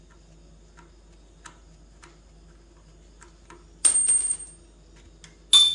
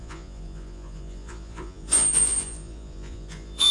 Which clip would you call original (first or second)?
first